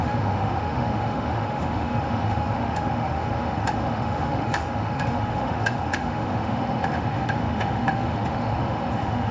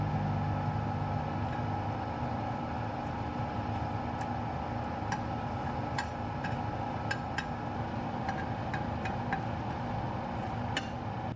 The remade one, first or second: first